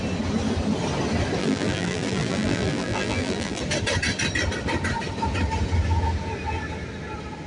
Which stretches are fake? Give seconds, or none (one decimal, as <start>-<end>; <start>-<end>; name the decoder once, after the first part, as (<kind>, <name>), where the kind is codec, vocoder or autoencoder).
1.4-3.6 (vocoder, BigVGAN v2)